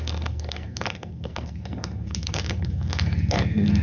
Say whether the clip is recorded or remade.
remade